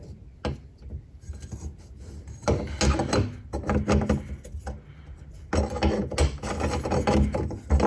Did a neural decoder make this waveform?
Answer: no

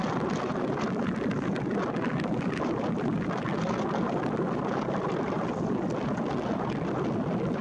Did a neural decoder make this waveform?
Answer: no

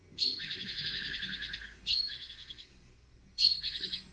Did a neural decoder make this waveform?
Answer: yes